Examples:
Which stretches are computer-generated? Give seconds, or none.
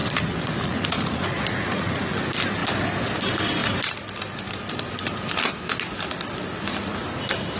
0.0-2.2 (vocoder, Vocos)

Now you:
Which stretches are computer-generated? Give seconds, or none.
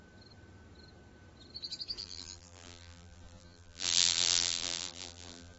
2.0-5.6 (vocoder, BigVGAN v2)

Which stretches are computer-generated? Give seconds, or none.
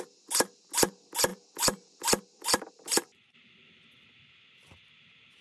1.3-4.1 (vocoder, BigVGAN v2)